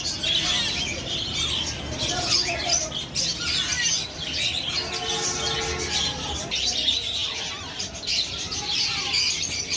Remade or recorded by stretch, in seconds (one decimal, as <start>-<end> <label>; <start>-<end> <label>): 0.0-9.8 recorded